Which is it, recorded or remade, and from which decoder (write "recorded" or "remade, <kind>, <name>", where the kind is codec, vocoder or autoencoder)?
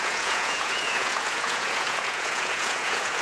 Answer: remade, vocoder, Vocos